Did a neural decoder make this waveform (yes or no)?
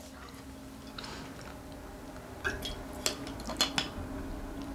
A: no